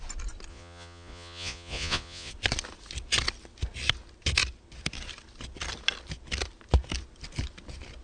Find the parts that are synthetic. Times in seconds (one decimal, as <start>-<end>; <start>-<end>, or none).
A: 0.5-2.3

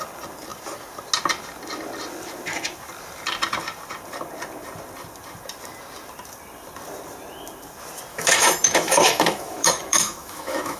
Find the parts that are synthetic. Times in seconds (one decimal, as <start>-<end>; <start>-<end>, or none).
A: 8.1-10.8

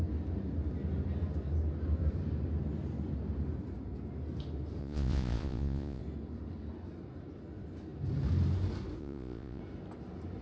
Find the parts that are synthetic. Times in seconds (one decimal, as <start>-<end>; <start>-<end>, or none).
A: 4.8-6.0; 9.0-9.6